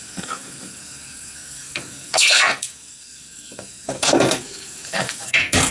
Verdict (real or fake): fake